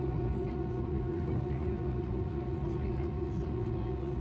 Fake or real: fake